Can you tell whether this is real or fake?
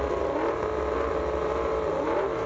real